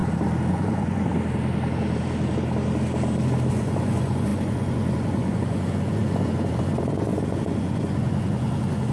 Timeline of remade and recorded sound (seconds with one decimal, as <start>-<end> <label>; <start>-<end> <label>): 0.0-0.5 recorded; 0.5-1.1 remade; 1.1-3.5 recorded; 3.5-8.9 remade